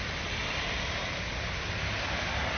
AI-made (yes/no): no